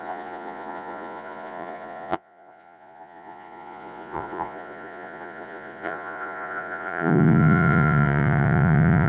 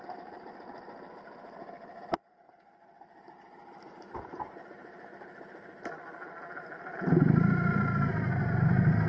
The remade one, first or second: first